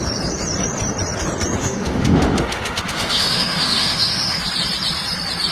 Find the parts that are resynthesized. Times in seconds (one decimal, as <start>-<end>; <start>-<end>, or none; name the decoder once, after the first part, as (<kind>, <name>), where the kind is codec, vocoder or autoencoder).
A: 1.6-4.4 (autoencoder, DAC-VAE)